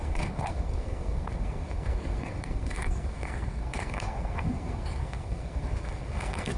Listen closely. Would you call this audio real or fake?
fake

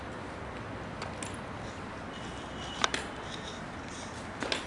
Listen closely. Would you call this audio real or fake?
real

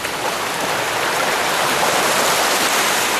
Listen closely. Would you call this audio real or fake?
real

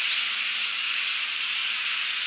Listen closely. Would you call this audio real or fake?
real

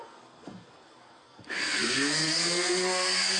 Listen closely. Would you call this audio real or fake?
fake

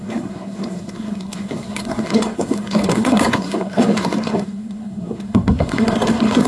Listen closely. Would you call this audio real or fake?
fake